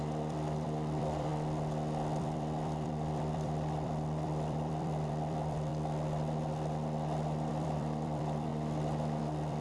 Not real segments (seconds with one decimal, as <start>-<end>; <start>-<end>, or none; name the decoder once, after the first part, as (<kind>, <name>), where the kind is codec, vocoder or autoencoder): 0.0-1.3 (vocoder, BigVGAN v2); 2.2-5.7; 7.5-8.5; 9.2-9.6